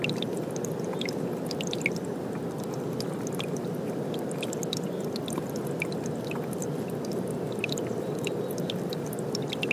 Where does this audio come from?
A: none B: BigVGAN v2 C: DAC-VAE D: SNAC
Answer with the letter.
A